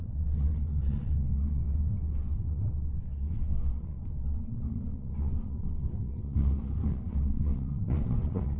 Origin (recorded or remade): remade